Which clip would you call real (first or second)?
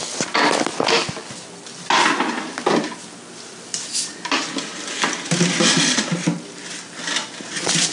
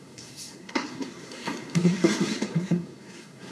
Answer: first